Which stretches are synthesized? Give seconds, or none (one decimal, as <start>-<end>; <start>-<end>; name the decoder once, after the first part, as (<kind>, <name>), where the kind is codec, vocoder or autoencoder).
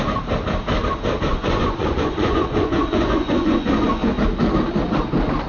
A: 1.3-4.1 (vocoder, Vocos)